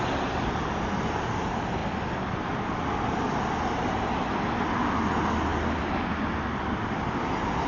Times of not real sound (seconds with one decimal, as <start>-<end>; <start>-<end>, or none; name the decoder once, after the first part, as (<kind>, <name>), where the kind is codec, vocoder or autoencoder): none